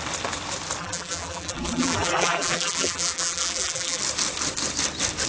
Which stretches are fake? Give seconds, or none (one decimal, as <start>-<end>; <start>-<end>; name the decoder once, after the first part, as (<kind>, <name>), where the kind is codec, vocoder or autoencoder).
0.8-4.0 (vocoder, BigVGAN v2)